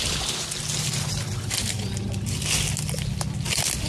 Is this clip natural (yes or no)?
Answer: yes